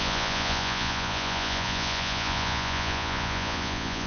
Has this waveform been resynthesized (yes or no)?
yes